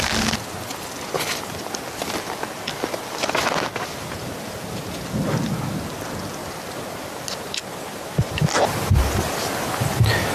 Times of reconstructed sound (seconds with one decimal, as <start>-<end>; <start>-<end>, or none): 6.4-8.6